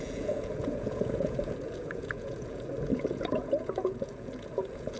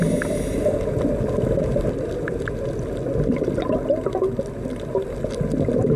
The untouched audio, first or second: second